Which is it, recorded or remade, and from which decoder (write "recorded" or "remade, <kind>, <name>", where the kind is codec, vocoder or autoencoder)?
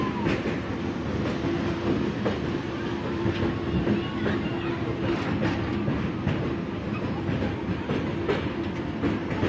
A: recorded